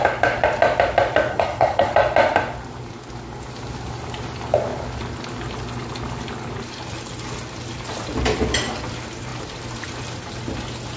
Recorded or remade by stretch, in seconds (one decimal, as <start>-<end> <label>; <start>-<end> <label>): 0.0-1.3 recorded; 1.3-1.9 remade; 1.9-11.0 recorded